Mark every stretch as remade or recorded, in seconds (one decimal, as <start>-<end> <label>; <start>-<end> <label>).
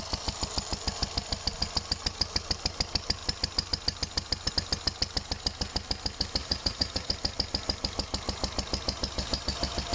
0.0-6.4 recorded; 6.4-7.1 remade; 7.1-9.9 recorded